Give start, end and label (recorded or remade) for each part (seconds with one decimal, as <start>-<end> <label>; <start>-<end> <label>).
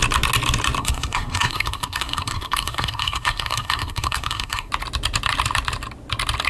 0.0-0.8 recorded; 0.8-4.7 remade; 4.7-6.5 recorded